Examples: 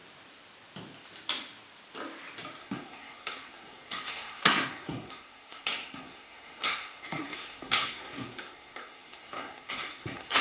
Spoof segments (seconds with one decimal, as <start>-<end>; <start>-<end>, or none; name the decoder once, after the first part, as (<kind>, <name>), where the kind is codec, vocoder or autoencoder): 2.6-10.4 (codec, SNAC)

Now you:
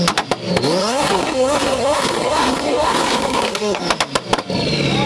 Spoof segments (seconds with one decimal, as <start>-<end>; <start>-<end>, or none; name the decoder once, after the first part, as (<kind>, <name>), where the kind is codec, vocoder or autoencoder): 0.8-3.8 (codec, SNAC)

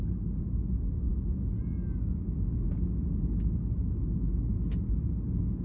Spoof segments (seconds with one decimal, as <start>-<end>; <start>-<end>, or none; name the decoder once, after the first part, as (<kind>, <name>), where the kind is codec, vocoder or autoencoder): none

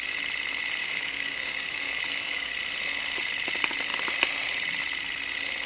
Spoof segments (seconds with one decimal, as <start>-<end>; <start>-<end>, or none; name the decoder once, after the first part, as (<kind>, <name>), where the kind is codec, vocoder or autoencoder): 0.8-2.5 (codec, DAC)

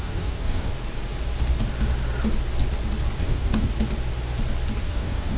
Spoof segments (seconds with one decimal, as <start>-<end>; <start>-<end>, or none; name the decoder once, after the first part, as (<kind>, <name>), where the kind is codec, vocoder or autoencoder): 0.0-0.7 (codec, DAC); 3.2-3.7; 4.8-5.4